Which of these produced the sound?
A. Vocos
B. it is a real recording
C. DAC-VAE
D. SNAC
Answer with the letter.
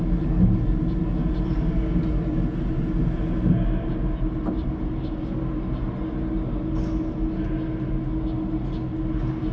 B